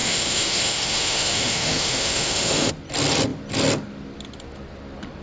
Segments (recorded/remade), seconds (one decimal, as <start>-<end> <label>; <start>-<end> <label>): 0.0-2.7 remade; 2.7-5.2 recorded